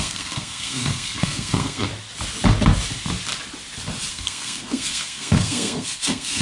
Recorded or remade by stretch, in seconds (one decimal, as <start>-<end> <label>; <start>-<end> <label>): 0.0-1.9 remade; 1.9-4.1 recorded; 4.1-6.4 remade